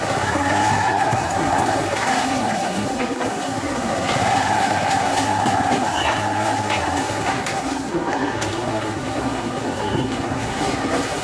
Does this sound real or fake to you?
fake